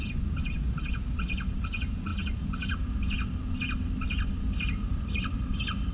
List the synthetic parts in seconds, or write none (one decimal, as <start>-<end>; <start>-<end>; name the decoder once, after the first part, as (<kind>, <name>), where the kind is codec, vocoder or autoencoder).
none